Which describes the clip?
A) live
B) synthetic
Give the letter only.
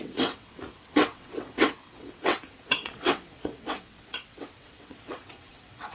B